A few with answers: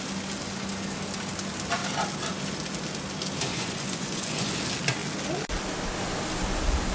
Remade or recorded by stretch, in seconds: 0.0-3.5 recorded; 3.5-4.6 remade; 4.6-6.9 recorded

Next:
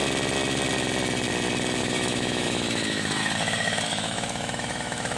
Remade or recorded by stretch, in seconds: 0.0-1.8 recorded; 1.8-5.2 remade

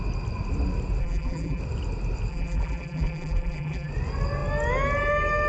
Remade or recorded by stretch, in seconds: 0.0-1.0 recorded; 1.0-1.6 remade; 1.6-2.3 recorded; 2.3-3.9 remade; 3.9-5.5 recorded

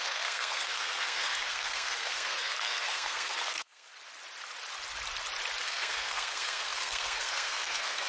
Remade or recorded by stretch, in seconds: 0.0-3.9 remade; 3.9-5.6 recorded; 5.6-8.1 remade

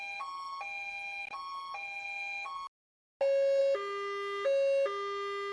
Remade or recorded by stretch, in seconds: 0.0-5.5 recorded

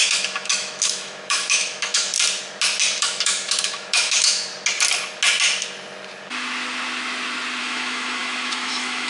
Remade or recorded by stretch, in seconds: 0.0-2.1 remade; 2.1-3.0 recorded; 3.0-4.5 remade; 4.5-7.6 recorded; 7.6-9.1 remade